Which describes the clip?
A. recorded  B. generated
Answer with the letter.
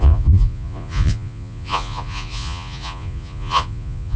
B